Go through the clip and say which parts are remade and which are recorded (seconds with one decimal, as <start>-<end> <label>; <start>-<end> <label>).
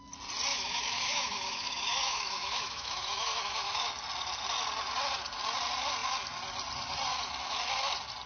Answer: 0.0-0.5 recorded; 0.5-3.9 remade; 3.9-8.3 recorded